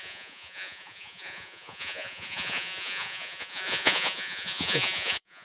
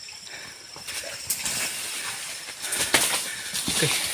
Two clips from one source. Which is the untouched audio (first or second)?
second